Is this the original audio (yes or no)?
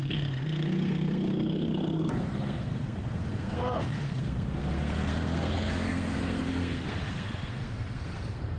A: no